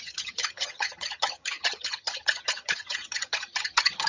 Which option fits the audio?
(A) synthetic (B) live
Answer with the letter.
A